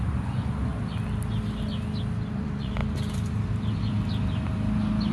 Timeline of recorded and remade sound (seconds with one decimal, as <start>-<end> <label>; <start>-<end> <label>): 0.0-0.7 remade; 0.7-2.3 recorded; 2.3-2.8 remade; 2.8-5.1 recorded